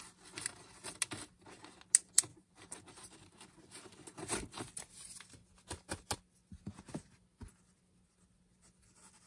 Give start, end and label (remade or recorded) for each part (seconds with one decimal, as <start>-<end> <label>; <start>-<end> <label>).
0.0-2.3 recorded; 2.3-4.6 remade; 4.6-9.3 recorded